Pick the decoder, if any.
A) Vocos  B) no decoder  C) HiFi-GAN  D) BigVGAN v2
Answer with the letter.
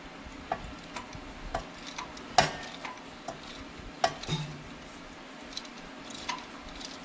B